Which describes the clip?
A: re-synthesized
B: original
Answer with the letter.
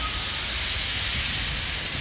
B